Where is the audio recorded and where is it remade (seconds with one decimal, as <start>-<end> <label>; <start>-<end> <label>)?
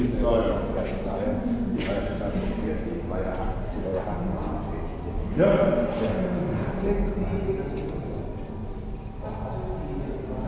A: 0.0-10.5 recorded